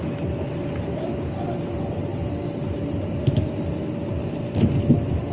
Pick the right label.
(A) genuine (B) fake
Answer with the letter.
A